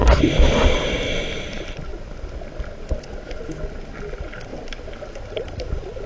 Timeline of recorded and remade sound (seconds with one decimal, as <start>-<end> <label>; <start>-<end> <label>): 0.0-0.9 remade; 0.9-6.1 recorded